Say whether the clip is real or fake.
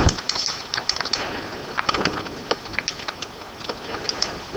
real